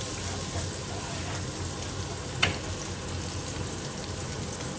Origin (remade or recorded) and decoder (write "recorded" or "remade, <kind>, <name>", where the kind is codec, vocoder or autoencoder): recorded